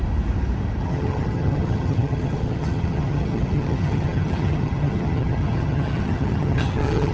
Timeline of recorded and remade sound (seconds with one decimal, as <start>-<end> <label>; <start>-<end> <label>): 0.0-0.8 recorded; 0.8-7.1 remade